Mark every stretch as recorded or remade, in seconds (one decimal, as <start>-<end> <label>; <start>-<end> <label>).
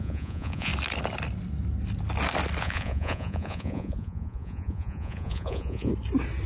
0.0-0.7 remade; 0.7-2.6 recorded; 2.6-5.9 remade; 5.9-6.5 recorded